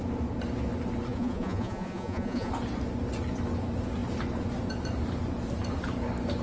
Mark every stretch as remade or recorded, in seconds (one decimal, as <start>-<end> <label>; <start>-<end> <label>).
0.0-1.1 recorded; 1.1-2.5 remade; 2.5-6.4 recorded